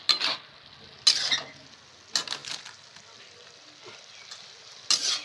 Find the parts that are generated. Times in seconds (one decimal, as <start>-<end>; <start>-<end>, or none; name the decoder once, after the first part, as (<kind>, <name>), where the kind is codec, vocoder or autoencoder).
none